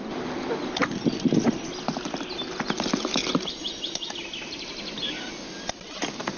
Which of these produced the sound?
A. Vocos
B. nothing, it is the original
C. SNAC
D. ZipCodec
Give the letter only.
B